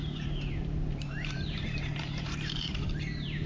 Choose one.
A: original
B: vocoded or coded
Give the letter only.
B